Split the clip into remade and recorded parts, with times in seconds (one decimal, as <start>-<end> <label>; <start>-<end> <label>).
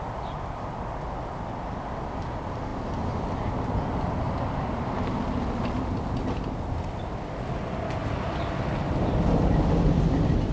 0.0-10.5 recorded